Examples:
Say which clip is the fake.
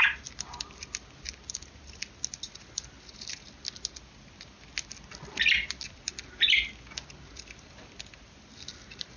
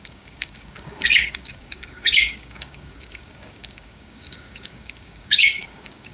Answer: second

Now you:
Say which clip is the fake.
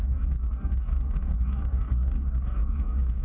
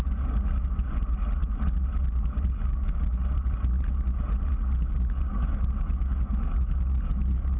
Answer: first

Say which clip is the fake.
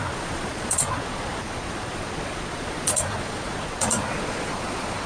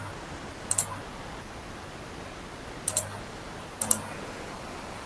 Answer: first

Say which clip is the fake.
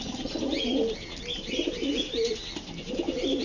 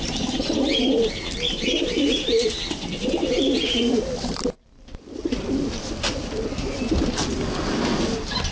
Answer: second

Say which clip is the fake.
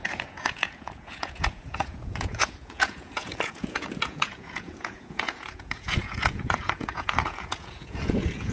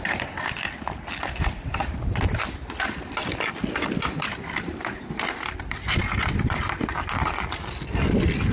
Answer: first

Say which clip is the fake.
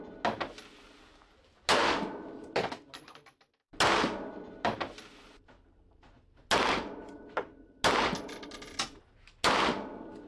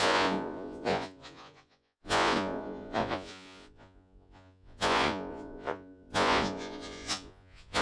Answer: second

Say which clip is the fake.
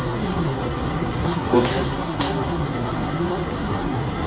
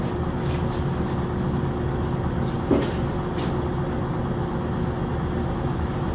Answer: first